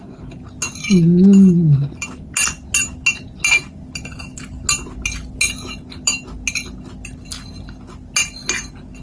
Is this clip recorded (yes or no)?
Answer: yes